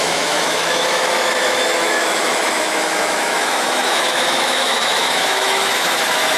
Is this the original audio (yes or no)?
no